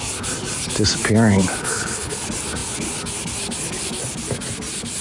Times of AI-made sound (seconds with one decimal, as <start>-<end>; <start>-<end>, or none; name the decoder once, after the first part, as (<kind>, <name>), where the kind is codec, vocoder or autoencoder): 1.6-2.2 (codec, HILCodec)